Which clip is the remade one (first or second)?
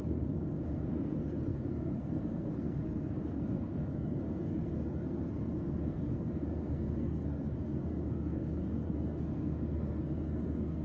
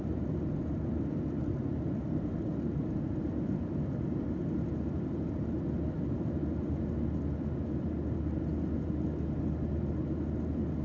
first